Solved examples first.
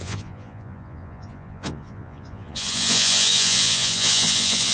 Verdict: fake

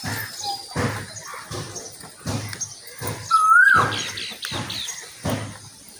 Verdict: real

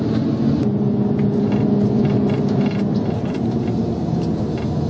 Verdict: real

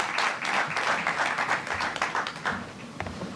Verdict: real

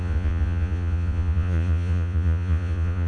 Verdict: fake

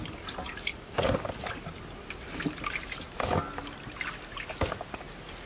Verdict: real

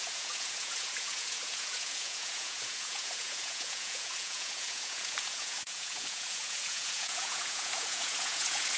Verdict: fake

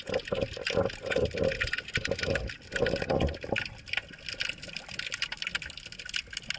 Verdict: real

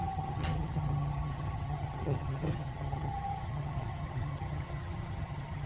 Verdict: fake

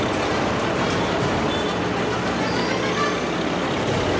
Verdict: real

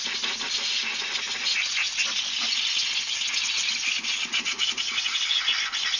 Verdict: real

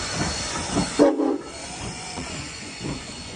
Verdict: fake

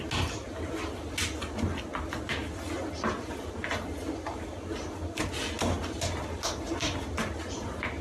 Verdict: real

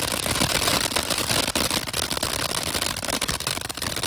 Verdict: real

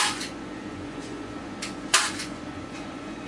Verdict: fake